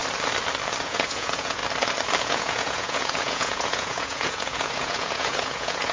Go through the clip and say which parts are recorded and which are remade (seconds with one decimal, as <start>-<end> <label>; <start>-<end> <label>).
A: 0.0-0.8 recorded; 0.8-1.6 remade; 1.6-2.2 recorded; 2.2-5.9 remade